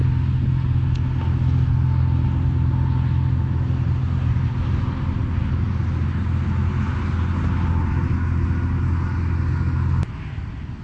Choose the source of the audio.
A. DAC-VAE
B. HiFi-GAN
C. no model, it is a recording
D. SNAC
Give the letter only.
C